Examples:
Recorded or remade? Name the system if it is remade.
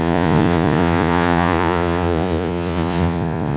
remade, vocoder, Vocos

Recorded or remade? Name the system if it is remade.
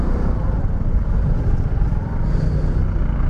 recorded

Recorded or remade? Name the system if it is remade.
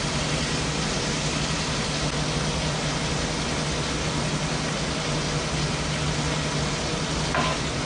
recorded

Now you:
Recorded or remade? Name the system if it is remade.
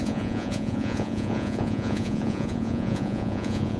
remade, vocoder, Vocos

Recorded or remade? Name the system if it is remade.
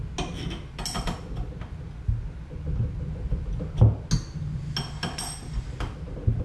recorded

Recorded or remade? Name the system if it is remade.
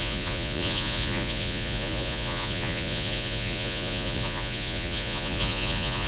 remade, vocoder, Vocos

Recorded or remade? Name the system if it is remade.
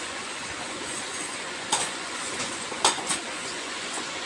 remade, vocoder, Vocos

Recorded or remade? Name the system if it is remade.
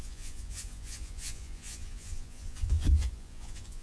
remade, vocoder, Vocos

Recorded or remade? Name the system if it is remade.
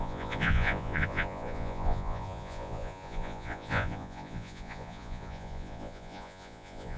remade, vocoder, Vocos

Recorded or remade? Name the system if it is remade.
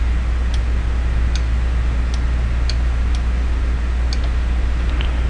recorded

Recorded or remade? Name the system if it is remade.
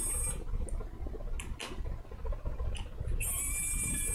recorded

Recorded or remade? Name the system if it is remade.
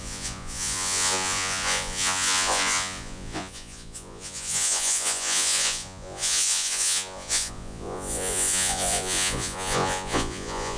remade, vocoder, Vocos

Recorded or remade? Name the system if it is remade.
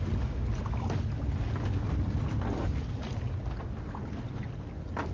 recorded